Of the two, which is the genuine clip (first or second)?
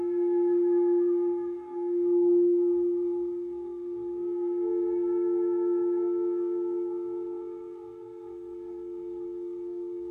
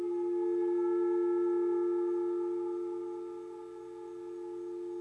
second